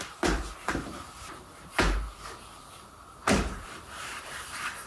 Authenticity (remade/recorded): remade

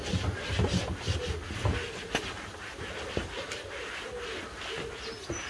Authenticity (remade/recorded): recorded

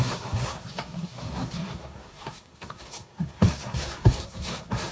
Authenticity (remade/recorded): remade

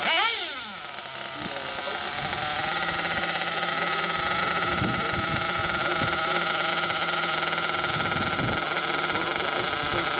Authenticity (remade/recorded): recorded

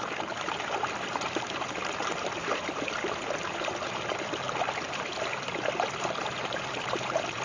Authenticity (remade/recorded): remade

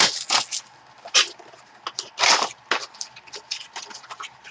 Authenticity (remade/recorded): recorded